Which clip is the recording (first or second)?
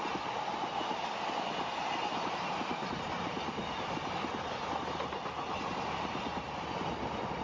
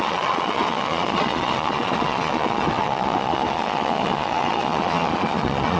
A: first